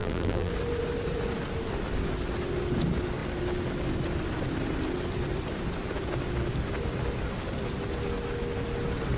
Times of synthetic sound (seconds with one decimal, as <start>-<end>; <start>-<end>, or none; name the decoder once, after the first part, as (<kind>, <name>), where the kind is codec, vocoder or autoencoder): 0.0-0.5 (vocoder, BigVGAN v2)